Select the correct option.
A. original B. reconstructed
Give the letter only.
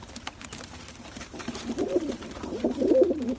B